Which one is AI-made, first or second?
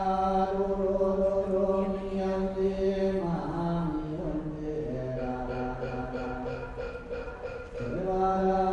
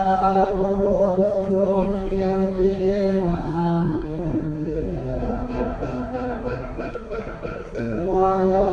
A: second